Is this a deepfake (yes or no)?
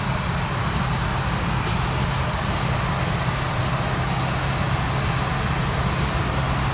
no